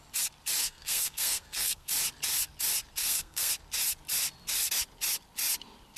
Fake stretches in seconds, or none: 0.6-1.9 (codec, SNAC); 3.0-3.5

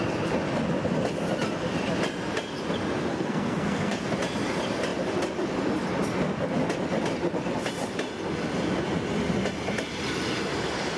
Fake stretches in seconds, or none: 3.1-4.0 (codec, SNAC)